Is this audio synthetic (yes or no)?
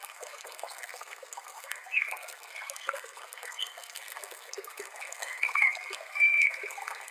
yes